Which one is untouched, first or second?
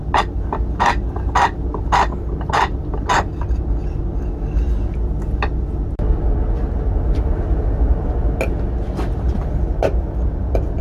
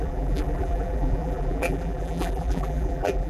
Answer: first